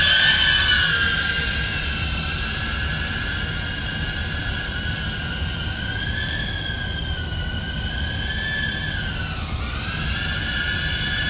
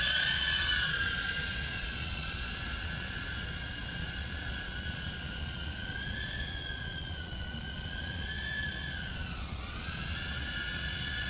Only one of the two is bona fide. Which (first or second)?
first